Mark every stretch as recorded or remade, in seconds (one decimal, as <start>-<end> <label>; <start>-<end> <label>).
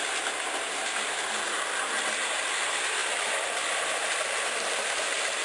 0.0-5.4 remade